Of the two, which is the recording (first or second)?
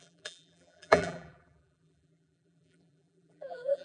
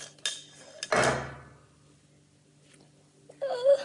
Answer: second